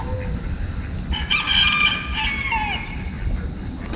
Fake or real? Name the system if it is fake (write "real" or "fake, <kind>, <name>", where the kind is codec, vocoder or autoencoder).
real